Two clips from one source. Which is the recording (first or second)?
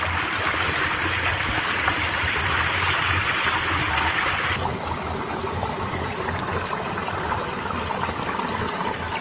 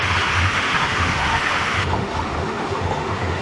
first